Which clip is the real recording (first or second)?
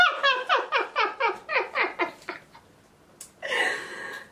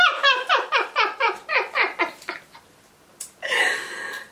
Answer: first